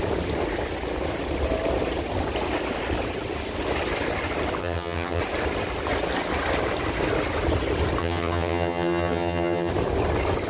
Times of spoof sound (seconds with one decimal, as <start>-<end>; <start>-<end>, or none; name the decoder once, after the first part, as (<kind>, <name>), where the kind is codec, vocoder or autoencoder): 4.6-5.2 (vocoder, HiFi-GAN); 8.0-9.7